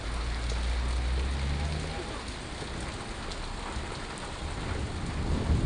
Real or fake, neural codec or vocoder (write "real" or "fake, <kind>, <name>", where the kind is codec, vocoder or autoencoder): real